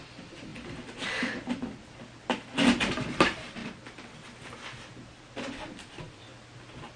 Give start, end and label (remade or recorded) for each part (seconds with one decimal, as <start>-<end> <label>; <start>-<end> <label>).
0.0-3.6 recorded; 3.6-4.1 remade; 4.1-7.0 recorded